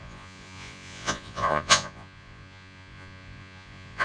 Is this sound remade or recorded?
remade